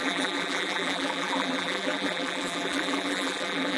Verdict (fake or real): fake